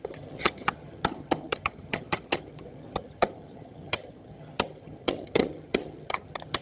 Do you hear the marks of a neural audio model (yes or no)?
yes